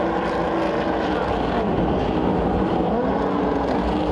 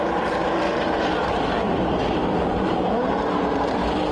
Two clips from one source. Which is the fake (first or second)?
second